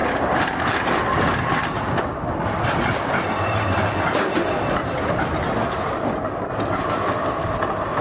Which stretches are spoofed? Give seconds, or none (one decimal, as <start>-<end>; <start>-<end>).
none